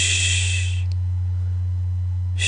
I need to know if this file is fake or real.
real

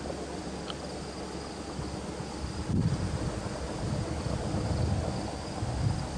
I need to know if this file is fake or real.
real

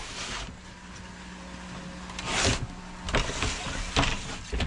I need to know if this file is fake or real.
real